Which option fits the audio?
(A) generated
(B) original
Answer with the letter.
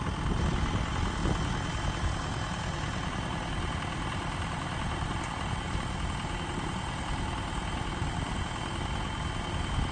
B